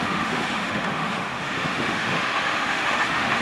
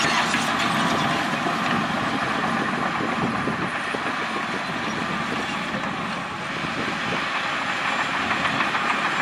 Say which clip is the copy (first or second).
first